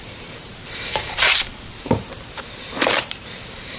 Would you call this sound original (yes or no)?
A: no